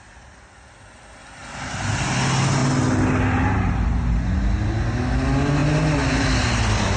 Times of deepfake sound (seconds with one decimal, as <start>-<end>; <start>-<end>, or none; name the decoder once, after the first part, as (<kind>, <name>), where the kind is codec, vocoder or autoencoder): none